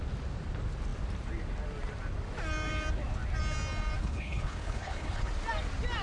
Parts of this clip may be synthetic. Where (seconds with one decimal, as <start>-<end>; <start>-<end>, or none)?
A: 4.0-5.3